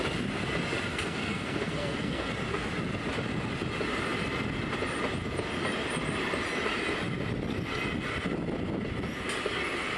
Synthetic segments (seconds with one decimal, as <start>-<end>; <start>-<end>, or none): 0.9-2.3